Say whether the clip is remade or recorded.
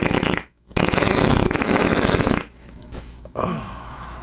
remade